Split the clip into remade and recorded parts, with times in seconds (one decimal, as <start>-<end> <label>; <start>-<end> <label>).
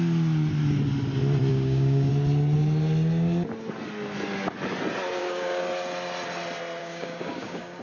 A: 0.0-1.5 recorded; 1.5-2.1 remade; 2.1-5.2 recorded; 5.2-5.7 remade; 5.7-6.8 recorded; 6.8-7.8 remade